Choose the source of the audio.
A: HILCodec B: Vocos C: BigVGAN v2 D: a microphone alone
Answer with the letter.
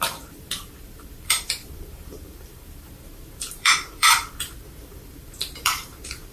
C